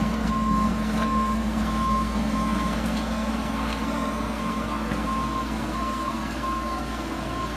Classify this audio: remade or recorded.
remade